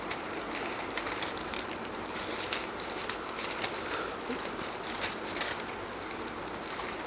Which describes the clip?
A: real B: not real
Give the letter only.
B